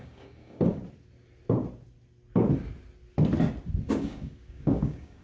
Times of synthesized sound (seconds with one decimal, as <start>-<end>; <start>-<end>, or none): 0.0-0.8; 3.9-5.2